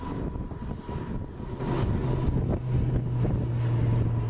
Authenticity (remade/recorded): recorded